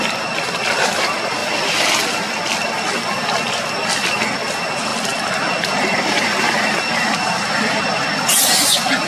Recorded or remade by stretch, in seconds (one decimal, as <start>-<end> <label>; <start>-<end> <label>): 0.0-9.1 recorded